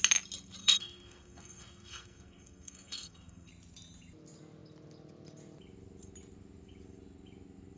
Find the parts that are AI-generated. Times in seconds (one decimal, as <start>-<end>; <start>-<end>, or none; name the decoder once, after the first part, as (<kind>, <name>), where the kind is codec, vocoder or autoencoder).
0.6-3.5 (codec, SNAC)